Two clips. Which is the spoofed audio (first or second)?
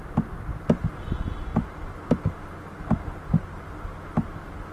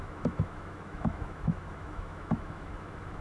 second